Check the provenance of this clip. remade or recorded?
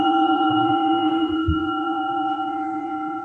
remade